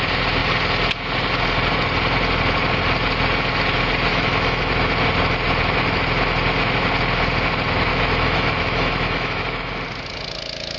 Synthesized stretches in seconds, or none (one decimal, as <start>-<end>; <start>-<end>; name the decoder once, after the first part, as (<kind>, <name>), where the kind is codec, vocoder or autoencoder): 4.1-4.7 (autoencoder, DAC-VAE); 7.9-9.7